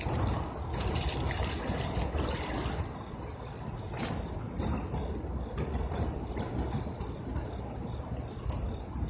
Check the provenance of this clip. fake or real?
real